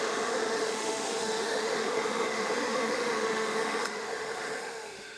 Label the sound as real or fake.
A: fake